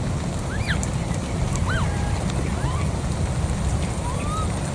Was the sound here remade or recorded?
recorded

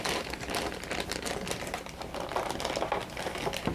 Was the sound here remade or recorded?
recorded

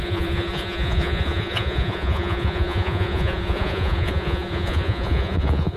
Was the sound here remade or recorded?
remade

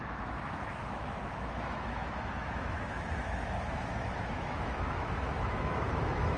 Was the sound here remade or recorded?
remade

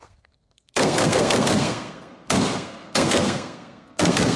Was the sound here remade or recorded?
remade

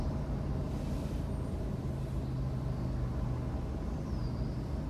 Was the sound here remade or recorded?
recorded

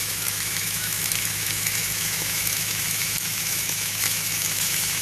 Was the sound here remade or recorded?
remade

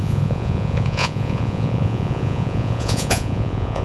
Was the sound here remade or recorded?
remade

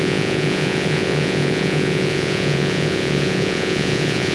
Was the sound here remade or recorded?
remade